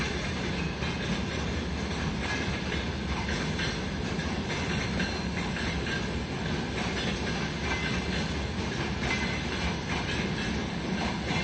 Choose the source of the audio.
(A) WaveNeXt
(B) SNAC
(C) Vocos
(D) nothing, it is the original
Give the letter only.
D